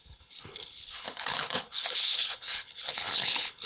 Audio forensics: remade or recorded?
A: remade